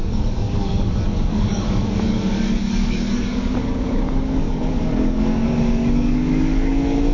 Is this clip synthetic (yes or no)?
yes